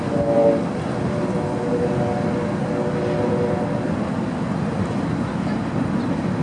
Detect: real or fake real